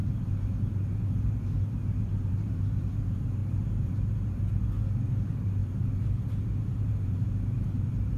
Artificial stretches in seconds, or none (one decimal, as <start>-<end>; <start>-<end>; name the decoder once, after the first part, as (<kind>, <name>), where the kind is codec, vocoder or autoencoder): 0.0-8.2 (vocoder, BigVGAN v2)